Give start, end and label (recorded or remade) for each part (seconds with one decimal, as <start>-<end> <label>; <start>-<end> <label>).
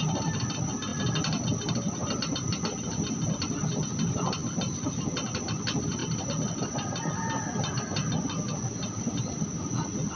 0.0-10.2 recorded